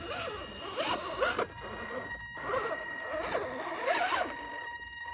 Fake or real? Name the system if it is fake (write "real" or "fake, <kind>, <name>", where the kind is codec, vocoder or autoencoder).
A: real